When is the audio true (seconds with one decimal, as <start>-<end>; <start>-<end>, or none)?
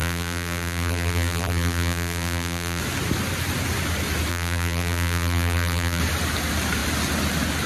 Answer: 2.8-4.3; 6.0-7.7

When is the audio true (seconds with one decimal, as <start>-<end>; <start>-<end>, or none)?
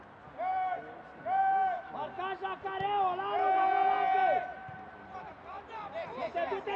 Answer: 0.0-4.6; 5.5-6.8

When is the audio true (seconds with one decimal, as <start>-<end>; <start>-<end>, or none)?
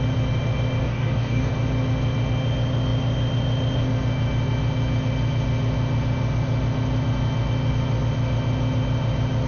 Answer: 0.0-0.8; 1.5-9.5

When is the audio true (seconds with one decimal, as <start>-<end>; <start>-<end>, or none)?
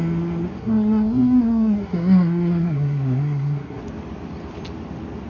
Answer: 0.0-0.6; 3.8-5.3